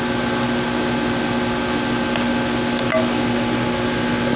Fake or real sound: real